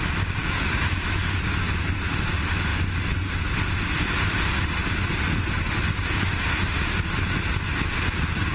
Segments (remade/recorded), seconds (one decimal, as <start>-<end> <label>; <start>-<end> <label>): 0.0-0.4 recorded; 0.4-1.8 remade; 1.8-8.5 recorded